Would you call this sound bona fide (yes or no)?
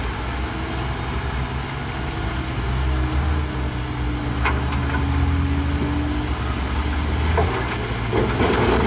yes